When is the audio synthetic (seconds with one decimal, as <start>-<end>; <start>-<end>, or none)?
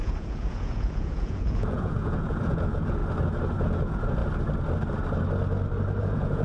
0.0-3.0; 3.6-4.2; 6.0-6.4